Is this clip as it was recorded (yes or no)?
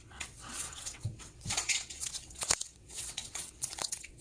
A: no